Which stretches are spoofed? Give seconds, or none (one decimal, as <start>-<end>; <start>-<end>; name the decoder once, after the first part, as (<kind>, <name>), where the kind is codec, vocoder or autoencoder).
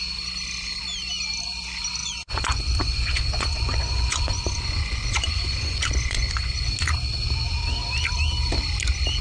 2.0-6.7 (vocoder, Vocos)